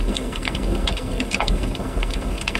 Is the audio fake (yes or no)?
yes